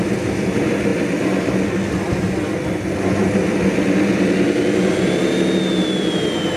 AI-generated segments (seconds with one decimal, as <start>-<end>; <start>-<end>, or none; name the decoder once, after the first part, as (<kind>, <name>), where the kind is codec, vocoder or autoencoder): none